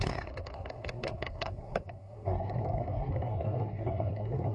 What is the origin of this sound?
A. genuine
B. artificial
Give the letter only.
B